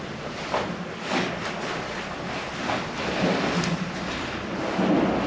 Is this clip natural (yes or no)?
yes